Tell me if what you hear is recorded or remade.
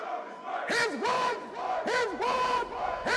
remade